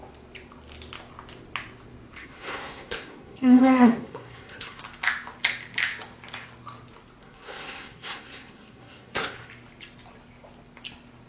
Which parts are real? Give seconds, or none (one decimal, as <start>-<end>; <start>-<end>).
0.0-2.2; 4.8-7.2; 9.5-11.3